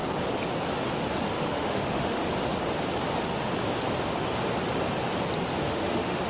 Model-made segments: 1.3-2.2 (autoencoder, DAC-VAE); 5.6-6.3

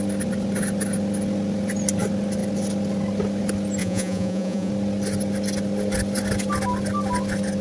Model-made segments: 3.8-4.7 (vocoder, Vocos)

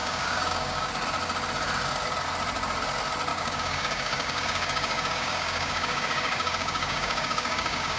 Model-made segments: 0.0-0.9 (codec, DAC); 3.3-8.0

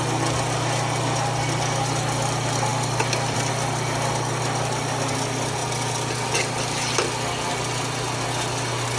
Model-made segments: none